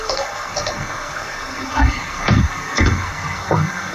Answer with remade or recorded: remade